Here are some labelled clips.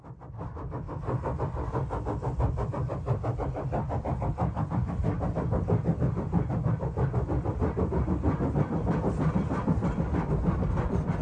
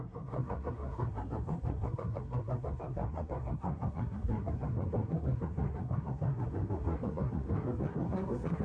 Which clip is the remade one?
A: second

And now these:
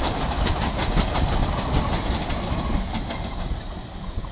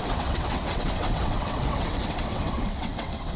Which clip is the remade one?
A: second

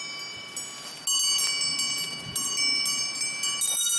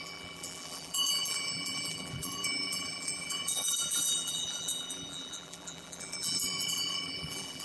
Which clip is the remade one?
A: second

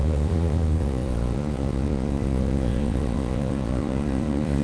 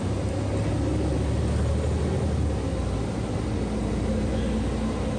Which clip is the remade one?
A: first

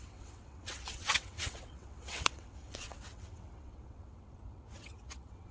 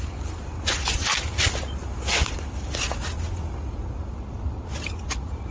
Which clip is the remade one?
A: first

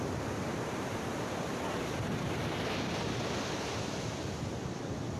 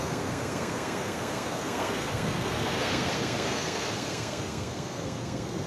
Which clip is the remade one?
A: second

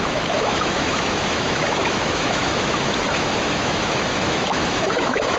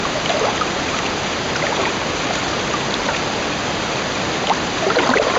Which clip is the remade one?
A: first